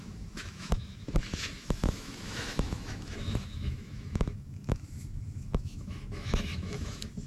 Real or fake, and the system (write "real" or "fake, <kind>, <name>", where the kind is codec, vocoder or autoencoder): fake, autoencoder, DAC-VAE